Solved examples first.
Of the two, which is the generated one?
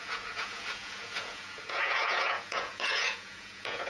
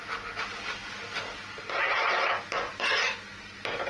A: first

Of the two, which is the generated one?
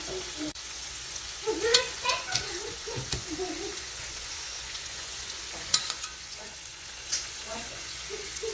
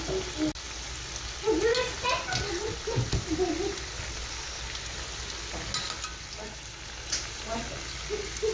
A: first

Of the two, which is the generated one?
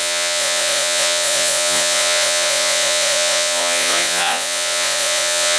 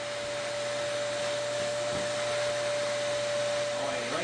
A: first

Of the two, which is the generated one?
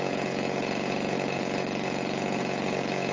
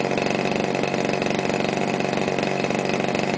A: first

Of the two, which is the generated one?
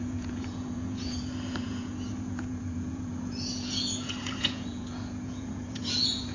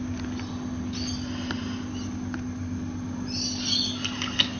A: first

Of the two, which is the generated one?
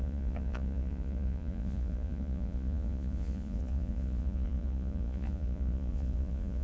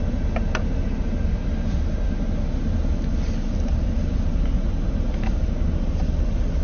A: first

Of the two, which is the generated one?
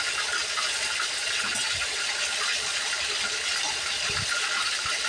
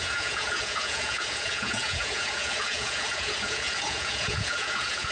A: second